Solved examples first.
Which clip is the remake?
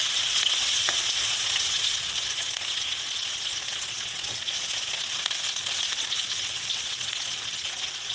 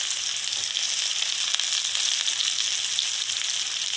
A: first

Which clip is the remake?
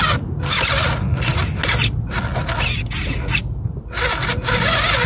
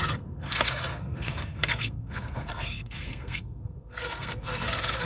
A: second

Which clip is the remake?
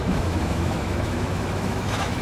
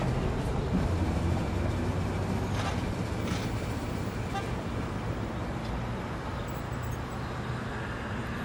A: first